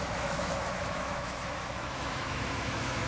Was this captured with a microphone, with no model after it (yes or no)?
no